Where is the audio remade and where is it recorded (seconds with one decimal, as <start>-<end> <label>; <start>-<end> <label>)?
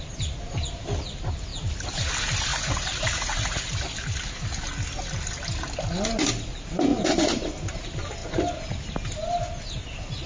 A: 0.0-2.5 recorded; 2.5-3.7 remade; 3.7-6.9 recorded; 6.9-7.8 remade; 7.8-10.3 recorded